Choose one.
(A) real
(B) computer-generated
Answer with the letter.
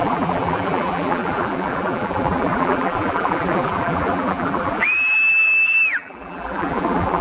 B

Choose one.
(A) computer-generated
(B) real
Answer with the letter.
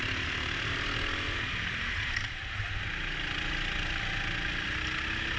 B